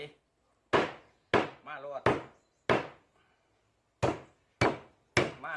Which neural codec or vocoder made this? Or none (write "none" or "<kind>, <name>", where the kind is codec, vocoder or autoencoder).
none